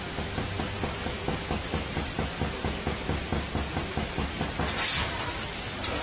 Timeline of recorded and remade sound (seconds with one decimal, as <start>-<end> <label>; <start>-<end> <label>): 0.0-1.0 recorded; 1.0-1.8 remade; 1.8-6.0 recorded